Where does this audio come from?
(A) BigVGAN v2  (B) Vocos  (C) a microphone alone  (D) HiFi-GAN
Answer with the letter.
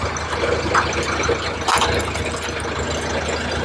C